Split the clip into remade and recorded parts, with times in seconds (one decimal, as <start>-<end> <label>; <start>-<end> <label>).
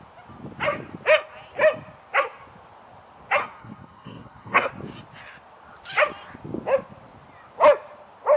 0.0-3.4 recorded; 3.4-4.7 remade; 4.7-8.4 recorded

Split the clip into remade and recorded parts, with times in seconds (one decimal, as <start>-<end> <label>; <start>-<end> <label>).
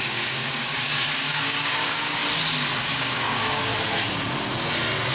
0.0-2.2 remade; 2.2-2.8 recorded; 2.8-3.7 remade; 3.7-5.1 recorded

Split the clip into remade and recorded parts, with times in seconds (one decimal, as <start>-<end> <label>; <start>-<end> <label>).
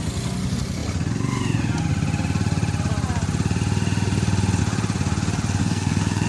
0.0-5.6 recorded; 5.6-6.3 remade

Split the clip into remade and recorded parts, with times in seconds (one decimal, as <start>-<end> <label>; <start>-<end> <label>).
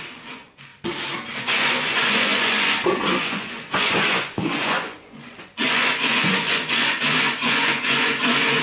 0.0-0.7 remade; 0.7-1.4 recorded; 1.4-8.6 remade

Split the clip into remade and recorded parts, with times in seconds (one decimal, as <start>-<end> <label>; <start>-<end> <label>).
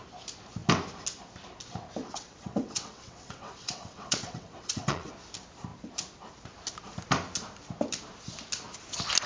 0.0-2.0 recorded; 2.0-5.1 remade; 5.1-9.3 recorded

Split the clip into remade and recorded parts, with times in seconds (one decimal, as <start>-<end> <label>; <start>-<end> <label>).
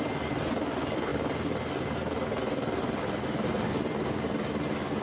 0.0-5.0 recorded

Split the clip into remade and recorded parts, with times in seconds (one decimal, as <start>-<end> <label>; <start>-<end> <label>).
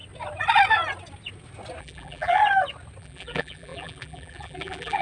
0.0-1.8 recorded; 1.8-2.4 remade; 2.4-3.0 recorded; 3.0-5.0 remade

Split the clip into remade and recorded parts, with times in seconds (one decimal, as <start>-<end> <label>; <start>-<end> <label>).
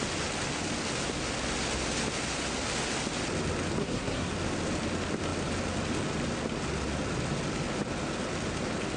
0.0-3.8 recorded; 3.8-4.3 remade; 4.3-9.0 recorded